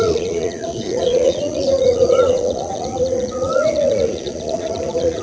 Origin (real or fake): fake